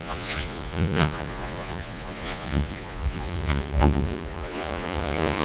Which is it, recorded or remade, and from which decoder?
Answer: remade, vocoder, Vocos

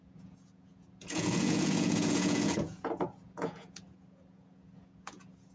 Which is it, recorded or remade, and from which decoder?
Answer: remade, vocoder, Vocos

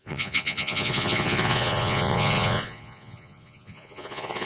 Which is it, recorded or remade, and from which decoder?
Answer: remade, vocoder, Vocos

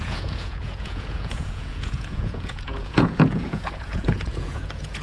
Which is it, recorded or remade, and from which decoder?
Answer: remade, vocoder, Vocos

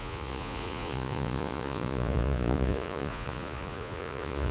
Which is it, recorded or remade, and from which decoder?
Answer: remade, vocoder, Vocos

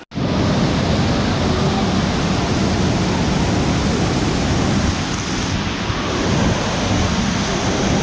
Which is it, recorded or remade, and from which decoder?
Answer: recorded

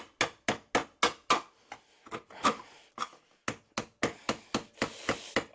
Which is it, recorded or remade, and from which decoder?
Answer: recorded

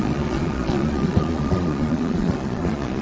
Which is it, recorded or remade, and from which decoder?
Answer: remade, vocoder, Vocos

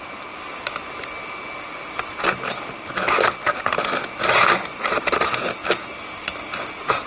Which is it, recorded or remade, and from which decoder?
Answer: recorded